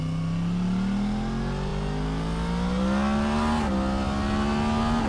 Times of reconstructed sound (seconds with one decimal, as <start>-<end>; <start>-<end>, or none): none